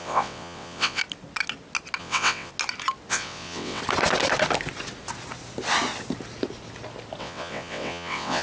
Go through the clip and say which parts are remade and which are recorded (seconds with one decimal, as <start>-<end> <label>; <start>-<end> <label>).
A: 0.0-1.0 remade; 1.0-2.0 recorded; 2.0-2.5 remade; 2.5-3.1 recorded; 3.1-3.8 remade; 3.8-7.2 recorded; 7.2-8.4 remade